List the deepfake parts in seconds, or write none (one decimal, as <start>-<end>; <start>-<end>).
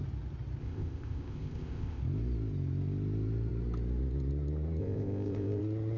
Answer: 0.6-2.0; 4.8-5.6